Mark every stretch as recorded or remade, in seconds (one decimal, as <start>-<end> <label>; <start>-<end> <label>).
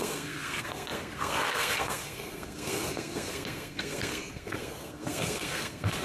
0.0-6.0 remade